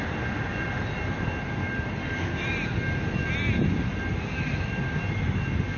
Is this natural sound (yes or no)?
yes